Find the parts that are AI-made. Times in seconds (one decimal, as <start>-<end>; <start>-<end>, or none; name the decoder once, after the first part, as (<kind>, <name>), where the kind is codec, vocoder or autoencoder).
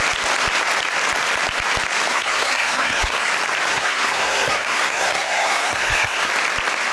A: 2.1-3.3 (codec, SNAC); 3.7-6.3